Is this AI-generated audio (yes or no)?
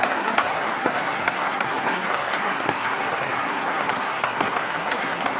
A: yes